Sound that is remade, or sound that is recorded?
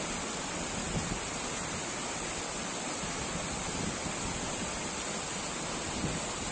recorded